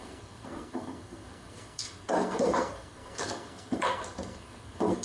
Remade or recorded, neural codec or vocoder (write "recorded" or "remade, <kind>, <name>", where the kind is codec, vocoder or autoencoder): remade, codec, SNAC